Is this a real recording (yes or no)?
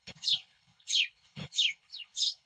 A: no